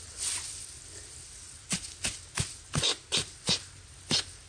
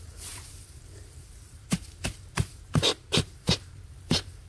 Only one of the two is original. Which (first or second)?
first